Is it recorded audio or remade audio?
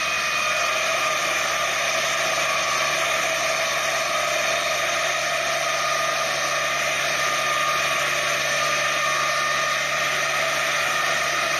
recorded